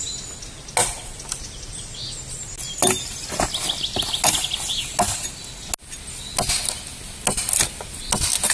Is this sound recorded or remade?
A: recorded